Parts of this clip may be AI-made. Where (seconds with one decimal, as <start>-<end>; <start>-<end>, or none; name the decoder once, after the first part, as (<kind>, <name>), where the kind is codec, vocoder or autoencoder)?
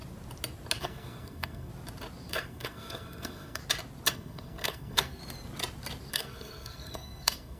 0.8-1.7 (codec, SNAC); 2.3-3.6; 4.1-5.2; 6.1-7.6